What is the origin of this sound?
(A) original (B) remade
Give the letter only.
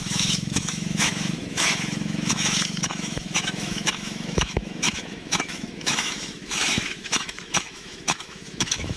B